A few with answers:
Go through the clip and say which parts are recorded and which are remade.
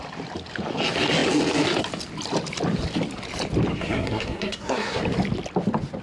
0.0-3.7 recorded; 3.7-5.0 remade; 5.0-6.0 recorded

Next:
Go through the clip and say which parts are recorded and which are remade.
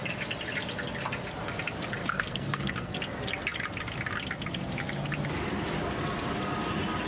0.0-2.0 recorded; 2.0-3.0 remade; 3.0-7.1 recorded